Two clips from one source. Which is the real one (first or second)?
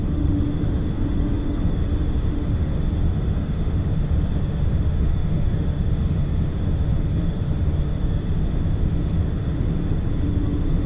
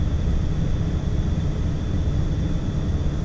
second